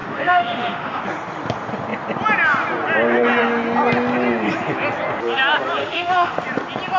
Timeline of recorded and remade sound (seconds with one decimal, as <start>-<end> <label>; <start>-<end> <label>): 0.0-1.0 remade; 1.0-5.8 recorded; 5.8-6.4 remade; 6.4-7.0 recorded